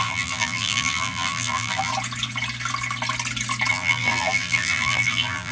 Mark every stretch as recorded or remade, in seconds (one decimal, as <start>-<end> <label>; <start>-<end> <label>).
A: 0.0-1.9 remade; 1.9-3.7 recorded; 3.7-5.5 remade

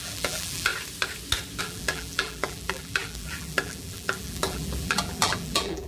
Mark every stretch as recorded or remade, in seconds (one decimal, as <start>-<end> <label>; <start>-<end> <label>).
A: 0.0-0.7 remade; 0.7-1.6 recorded; 1.6-5.9 remade